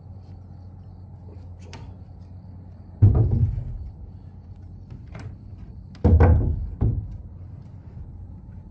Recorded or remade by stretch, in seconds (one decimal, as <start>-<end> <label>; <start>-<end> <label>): 0.0-8.7 recorded